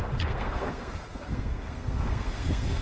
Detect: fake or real fake